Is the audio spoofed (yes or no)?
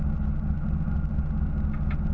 no